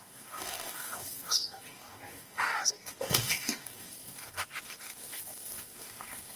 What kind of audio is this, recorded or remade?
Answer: remade